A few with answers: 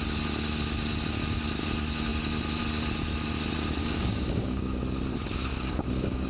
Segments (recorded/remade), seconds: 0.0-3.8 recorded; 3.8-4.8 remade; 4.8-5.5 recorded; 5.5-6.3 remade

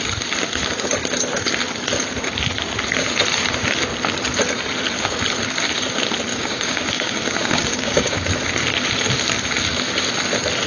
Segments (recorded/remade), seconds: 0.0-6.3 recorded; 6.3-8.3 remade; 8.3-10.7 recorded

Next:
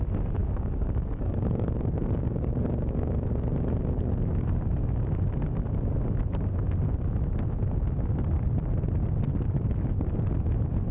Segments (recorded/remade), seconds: 0.0-0.4 recorded; 0.4-3.1 remade; 3.1-10.9 recorded

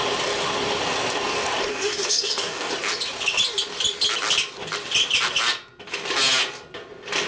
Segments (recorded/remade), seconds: 0.0-1.7 recorded; 1.7-2.7 remade; 2.7-7.3 recorded

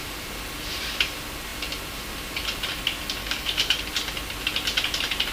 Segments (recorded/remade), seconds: 0.0-3.2 recorded; 3.2-3.9 remade; 3.9-5.3 recorded